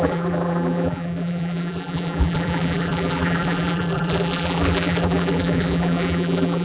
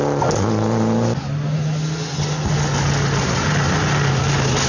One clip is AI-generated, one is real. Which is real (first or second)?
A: second